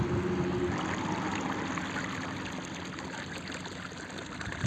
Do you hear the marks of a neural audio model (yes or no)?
no